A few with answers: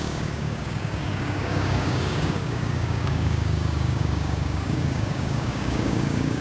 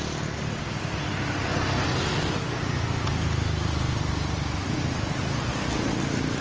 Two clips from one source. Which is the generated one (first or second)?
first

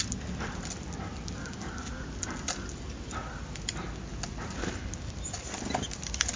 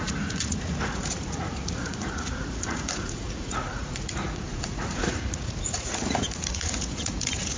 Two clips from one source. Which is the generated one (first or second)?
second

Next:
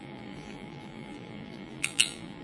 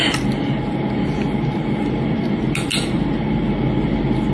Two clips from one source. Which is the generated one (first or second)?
first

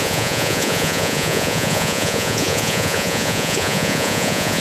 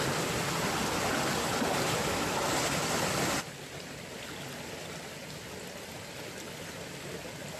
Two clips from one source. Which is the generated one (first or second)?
first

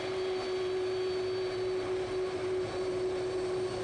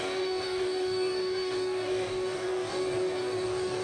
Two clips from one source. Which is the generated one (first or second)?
second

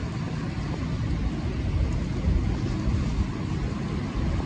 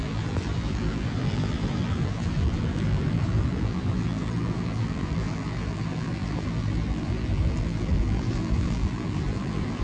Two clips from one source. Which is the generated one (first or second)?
second